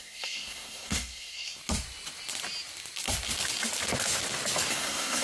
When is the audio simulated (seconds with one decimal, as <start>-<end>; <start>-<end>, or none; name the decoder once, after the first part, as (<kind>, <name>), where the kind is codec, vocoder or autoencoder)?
0.0-1.6 (codec, SNAC); 4.7-5.2